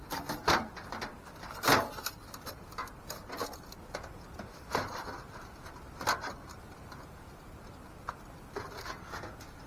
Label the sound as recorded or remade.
recorded